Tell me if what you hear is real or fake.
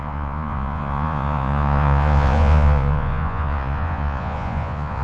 fake